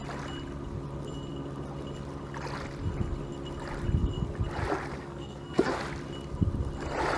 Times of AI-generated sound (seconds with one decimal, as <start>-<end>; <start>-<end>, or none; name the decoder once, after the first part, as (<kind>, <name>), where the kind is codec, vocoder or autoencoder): 5.0-5.8 (codec, SNAC)